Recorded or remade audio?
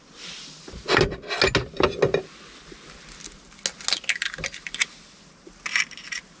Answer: recorded